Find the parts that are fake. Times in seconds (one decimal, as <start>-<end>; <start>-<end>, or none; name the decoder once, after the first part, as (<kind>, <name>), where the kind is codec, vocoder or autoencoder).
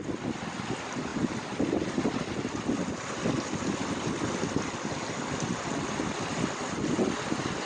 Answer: none